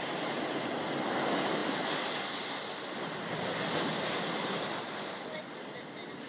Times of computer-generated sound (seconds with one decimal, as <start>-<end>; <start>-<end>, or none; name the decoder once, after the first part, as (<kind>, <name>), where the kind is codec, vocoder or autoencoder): none